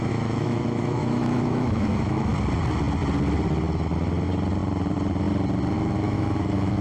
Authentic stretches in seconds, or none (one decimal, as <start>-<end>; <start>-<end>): 2.3-5.7